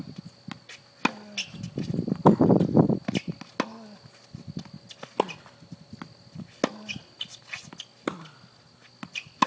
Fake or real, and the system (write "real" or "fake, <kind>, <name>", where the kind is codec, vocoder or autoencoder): real